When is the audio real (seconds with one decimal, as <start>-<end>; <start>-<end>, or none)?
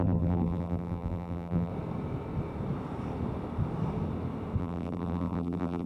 1.7-4.6